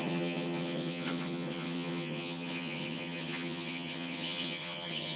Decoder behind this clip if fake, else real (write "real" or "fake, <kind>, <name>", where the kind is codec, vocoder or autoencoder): fake, vocoder, HiFi-GAN